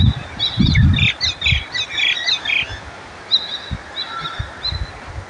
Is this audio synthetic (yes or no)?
no